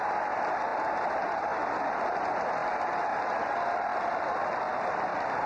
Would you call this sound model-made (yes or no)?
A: no